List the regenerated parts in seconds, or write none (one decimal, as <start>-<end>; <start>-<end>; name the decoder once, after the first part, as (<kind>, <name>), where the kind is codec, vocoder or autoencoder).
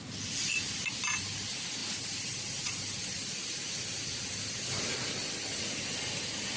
none